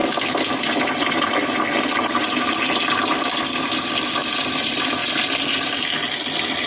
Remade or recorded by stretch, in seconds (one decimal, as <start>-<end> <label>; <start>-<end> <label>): 0.0-6.7 recorded